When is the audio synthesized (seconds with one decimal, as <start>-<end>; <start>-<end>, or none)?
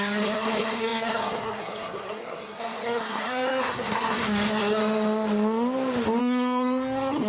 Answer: 0.0-4.8; 6.2-7.3